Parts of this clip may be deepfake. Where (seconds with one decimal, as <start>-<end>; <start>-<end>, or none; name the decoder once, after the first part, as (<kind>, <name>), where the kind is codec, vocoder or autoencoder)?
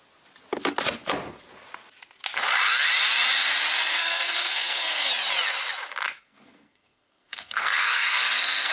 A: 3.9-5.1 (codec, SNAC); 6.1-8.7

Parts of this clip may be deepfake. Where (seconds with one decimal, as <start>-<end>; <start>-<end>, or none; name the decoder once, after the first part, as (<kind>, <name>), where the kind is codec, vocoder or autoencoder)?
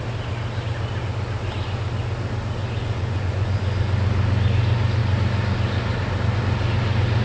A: 2.8-3.6 (vocoder, Vocos)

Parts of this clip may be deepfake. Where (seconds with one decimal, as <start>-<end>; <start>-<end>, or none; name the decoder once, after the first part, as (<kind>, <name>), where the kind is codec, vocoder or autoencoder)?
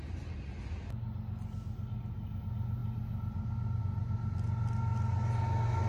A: none